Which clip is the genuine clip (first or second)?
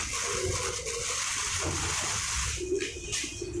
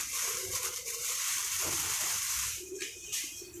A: first